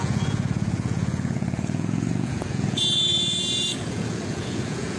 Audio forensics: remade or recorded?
remade